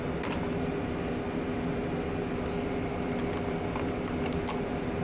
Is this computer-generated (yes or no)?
no